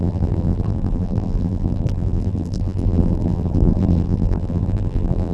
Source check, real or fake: fake